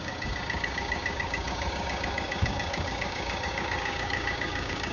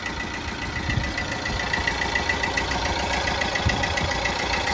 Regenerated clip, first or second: first